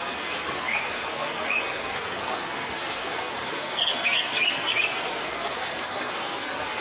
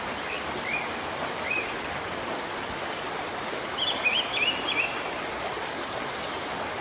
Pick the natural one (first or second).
second